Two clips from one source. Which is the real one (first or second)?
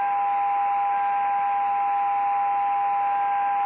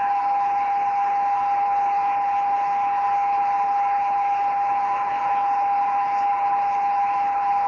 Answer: first